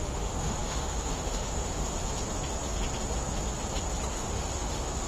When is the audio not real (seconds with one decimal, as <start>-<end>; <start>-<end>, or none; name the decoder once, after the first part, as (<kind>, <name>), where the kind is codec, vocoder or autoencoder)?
0.0-2.0 (autoencoder, DAC-VAE); 4.1-5.1